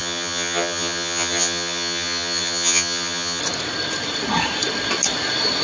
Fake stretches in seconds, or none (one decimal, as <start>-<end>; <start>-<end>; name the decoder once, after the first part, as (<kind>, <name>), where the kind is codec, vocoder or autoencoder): 0.0-3.4 (vocoder, HiFi-GAN)